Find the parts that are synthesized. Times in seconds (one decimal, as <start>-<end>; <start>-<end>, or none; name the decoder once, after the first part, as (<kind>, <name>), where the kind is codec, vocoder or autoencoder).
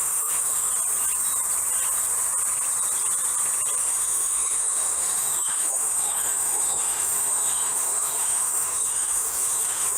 0.0-0.7 (autoencoder, DAC-VAE); 3.8-10.0